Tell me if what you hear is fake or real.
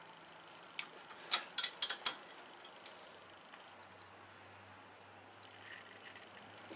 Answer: real